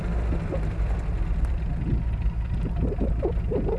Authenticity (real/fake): real